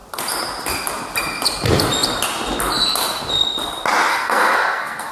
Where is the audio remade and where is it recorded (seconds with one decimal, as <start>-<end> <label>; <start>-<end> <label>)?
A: 0.0-4.1 recorded; 4.1-5.1 remade